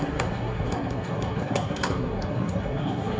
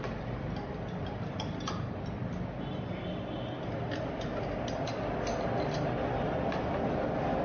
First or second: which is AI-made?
first